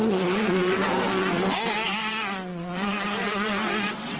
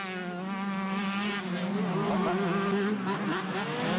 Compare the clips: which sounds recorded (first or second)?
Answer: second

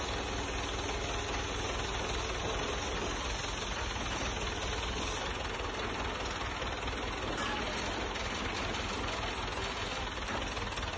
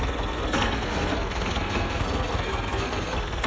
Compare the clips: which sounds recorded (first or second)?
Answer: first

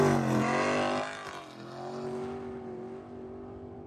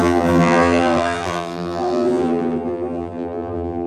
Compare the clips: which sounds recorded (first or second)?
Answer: first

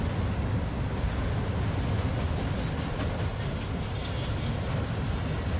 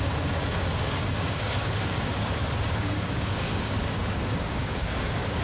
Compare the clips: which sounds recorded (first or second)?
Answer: first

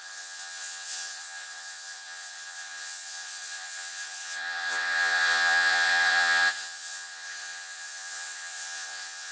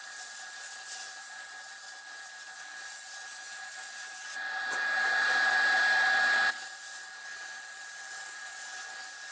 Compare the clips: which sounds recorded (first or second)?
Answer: second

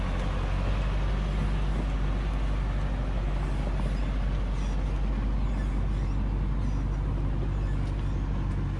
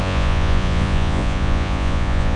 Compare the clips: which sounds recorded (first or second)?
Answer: first